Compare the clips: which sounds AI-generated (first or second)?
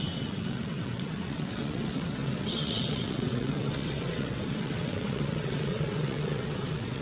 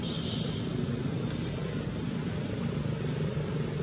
first